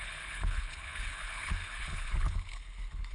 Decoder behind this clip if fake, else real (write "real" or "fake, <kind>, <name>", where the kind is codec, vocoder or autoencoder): fake, codec, HILCodec